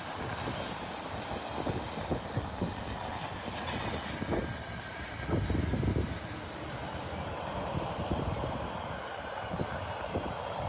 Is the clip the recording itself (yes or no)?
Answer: yes